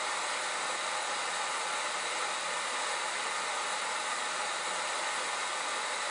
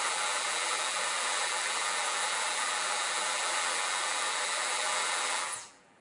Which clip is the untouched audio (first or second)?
first